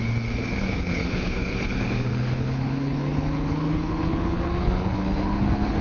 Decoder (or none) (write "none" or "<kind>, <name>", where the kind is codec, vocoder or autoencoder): codec, HILCodec